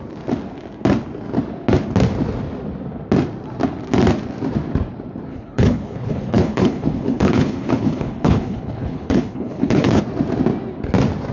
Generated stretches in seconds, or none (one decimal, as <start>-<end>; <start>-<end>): 5.3-10.0

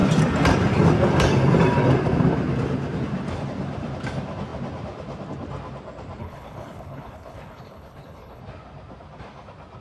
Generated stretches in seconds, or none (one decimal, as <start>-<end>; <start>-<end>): 6.2-8.4

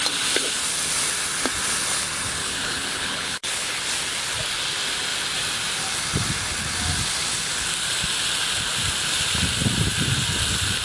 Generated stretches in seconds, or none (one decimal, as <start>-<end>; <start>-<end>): 2.4-3.8

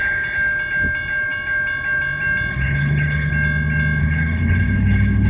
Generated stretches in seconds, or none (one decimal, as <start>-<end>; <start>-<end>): 2.5-3.3; 4.0-5.3

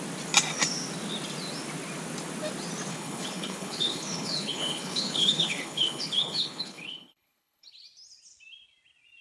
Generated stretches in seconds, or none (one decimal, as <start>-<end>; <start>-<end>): 2.9-7.7

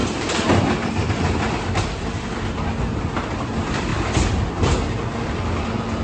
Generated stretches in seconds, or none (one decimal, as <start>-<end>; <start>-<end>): none